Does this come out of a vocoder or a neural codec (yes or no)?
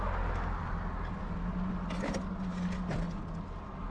no